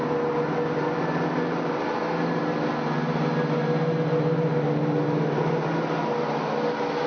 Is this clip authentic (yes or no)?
yes